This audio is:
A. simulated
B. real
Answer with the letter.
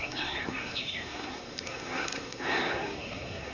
A